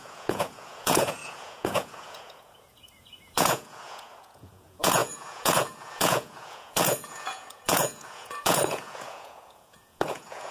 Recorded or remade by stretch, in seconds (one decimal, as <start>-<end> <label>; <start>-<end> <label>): 0.0-10.5 remade

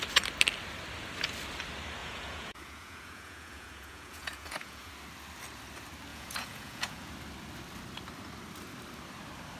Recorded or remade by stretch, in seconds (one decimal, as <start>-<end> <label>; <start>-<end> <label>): 0.0-2.0 recorded; 2.0-4.9 remade; 4.9-6.1 recorded; 6.1-7.1 remade; 7.1-9.6 recorded

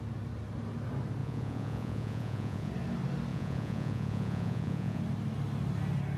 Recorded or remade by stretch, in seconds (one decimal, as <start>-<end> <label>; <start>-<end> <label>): 0.0-1.2 recorded; 1.2-2.7 remade; 2.7-3.3 recorded; 3.3-5.0 remade; 5.0-6.2 recorded

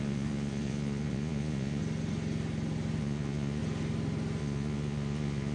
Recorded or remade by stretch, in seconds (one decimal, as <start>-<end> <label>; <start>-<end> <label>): 0.0-1.8 remade; 1.8-3.0 recorded; 3.0-3.6 remade; 3.6-4.4 recorded; 4.4-5.5 remade

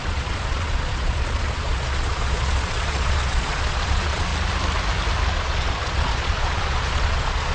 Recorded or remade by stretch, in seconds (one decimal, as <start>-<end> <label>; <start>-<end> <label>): 0.0-4.3 remade; 4.3-5.3 recorded; 5.3-7.5 remade

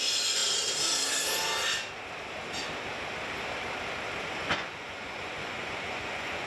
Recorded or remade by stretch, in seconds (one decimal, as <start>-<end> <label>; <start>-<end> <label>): 0.0-0.4 remade; 0.4-4.3 recorded; 4.3-6.5 remade

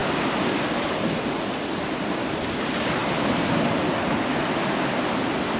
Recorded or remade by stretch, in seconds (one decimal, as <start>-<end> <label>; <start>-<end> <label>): 0.0-5.6 recorded